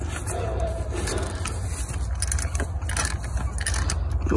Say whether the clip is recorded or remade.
recorded